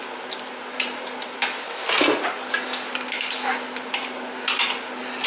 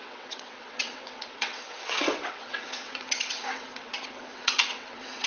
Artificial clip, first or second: second